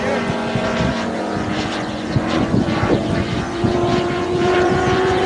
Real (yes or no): no